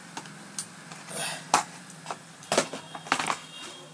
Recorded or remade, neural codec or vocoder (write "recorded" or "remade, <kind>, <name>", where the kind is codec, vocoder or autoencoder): recorded